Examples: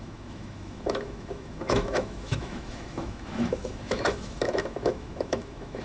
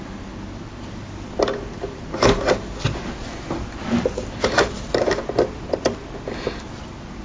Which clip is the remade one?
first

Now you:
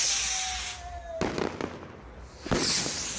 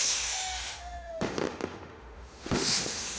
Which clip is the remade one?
second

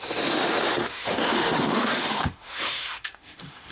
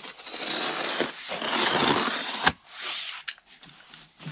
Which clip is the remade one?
first